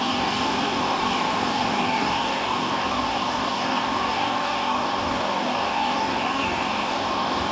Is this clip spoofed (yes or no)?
yes